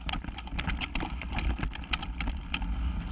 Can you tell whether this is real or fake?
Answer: real